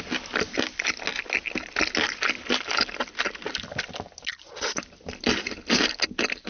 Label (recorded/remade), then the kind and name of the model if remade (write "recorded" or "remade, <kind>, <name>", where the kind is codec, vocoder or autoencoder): recorded